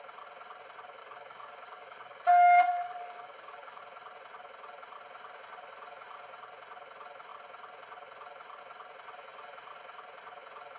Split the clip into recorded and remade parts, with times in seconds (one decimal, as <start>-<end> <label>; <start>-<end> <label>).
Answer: 0.0-1.0 recorded; 1.0-3.8 remade; 3.8-10.8 recorded